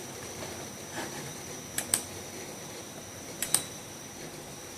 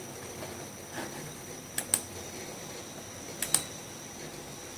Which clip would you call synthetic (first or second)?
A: first